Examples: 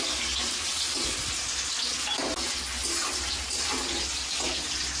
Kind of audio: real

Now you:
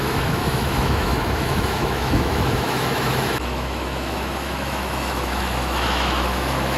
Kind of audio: fake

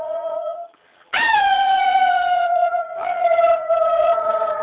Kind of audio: fake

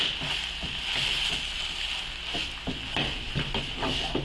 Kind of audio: real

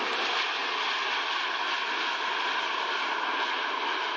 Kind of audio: real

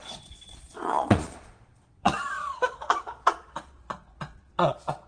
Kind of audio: fake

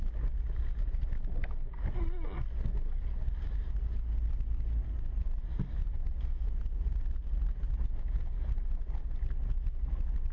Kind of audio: real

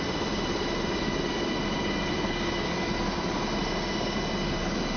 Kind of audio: real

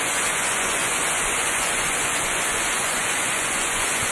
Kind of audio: fake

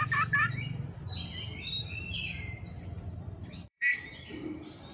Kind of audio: fake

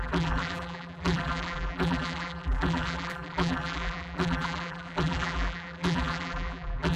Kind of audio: fake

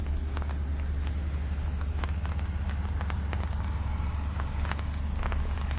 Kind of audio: real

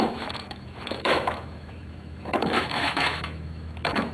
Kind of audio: fake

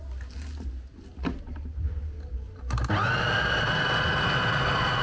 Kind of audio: real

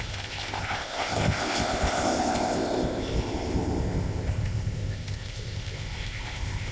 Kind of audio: fake